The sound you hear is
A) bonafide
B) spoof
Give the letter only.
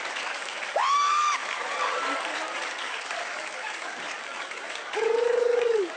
B